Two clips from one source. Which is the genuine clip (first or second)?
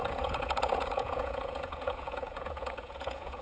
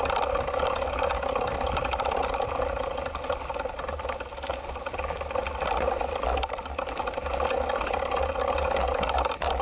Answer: second